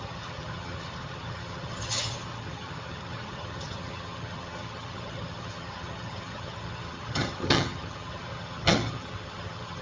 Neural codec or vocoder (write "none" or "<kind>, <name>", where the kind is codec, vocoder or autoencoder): vocoder, HiFi-GAN